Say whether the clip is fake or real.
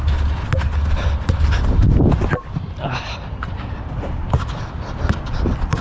real